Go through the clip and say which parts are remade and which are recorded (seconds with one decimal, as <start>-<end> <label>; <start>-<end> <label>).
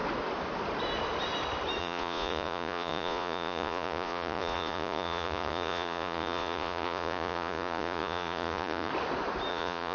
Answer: 0.0-1.8 recorded; 1.8-8.9 remade; 8.9-9.5 recorded; 9.5-9.9 remade